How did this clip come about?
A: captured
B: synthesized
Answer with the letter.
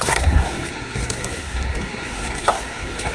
B